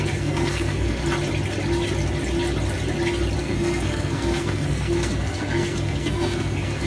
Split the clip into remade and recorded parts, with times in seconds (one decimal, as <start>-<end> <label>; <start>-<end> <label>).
0.0-1.0 remade; 1.0-3.4 recorded; 3.4-6.9 remade